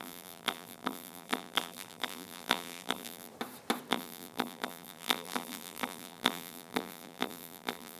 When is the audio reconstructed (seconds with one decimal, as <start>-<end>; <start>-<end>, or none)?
0.0-3.3; 3.9-8.0